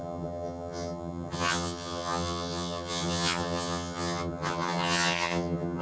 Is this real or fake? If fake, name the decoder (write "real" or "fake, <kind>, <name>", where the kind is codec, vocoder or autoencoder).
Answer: fake, vocoder, HiFi-GAN